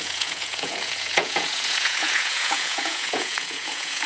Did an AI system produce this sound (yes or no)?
yes